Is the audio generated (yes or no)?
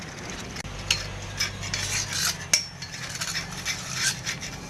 no